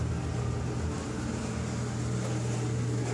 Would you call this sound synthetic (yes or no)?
no